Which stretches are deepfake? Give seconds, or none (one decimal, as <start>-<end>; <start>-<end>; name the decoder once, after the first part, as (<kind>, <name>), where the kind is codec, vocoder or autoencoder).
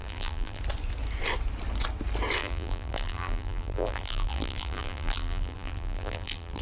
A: 0.0-0.6 (vocoder, BigVGAN v2); 2.4-6.6